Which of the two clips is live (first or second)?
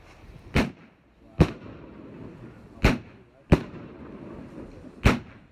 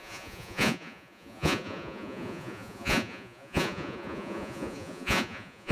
first